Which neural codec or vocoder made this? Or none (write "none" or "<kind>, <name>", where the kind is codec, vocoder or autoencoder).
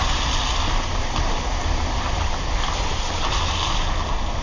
none